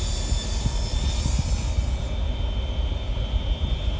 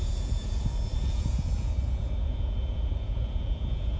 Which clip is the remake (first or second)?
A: second